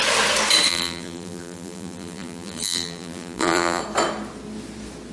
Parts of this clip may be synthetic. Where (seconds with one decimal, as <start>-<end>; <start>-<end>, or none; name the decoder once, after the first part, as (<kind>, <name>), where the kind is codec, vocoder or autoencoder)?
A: 0.7-3.8 (vocoder, BigVGAN v2)